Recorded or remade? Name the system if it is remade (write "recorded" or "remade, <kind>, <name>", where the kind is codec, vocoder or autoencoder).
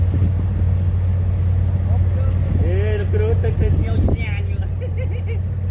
recorded